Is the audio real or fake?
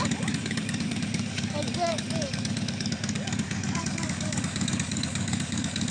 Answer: fake